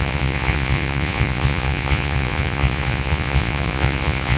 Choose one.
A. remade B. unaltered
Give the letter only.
A